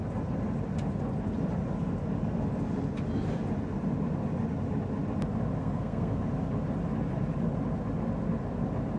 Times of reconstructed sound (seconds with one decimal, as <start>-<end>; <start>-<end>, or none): 5.6-6.2